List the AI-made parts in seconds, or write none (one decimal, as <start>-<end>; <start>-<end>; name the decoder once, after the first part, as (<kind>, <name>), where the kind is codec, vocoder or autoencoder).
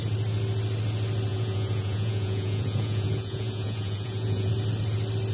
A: 1.3-4.5 (vocoder, Vocos)